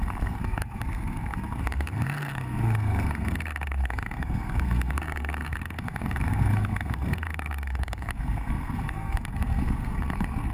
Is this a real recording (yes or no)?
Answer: no